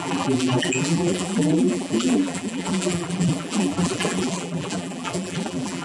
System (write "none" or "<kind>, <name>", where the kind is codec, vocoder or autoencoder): vocoder, BigVGAN v2